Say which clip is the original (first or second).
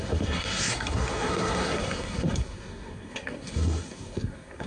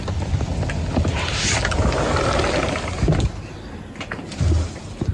second